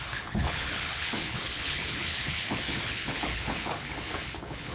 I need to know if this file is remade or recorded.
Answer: remade